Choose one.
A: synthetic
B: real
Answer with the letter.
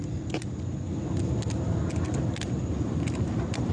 B